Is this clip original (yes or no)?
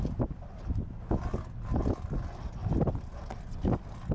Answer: yes